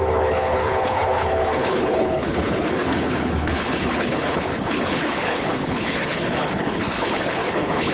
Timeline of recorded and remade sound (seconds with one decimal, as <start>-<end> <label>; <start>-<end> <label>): 0.0-7.9 remade